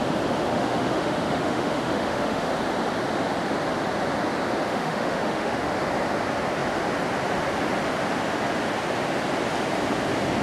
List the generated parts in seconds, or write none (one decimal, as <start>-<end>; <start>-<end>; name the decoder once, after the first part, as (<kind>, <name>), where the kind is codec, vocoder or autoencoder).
0.5-2.5 (autoencoder, DAC-VAE); 4.7-5.7